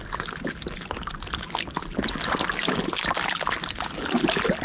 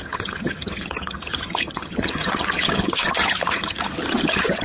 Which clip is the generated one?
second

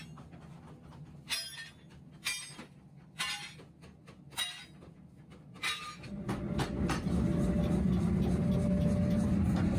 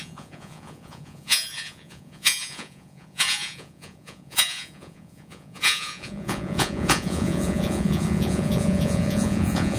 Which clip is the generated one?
second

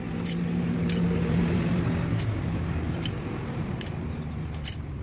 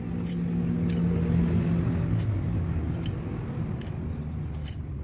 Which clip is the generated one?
first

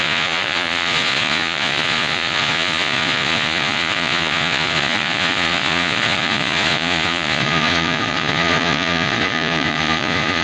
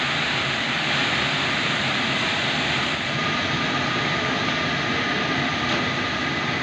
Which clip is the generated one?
first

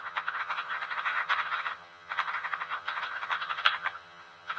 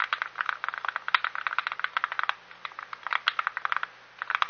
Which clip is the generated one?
first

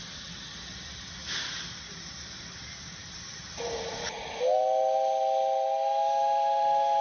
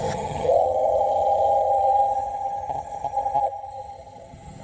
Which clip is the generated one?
second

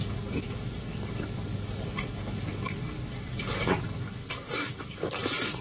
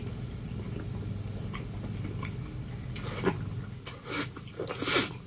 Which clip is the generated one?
first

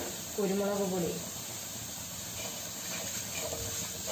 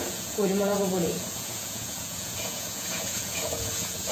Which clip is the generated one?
second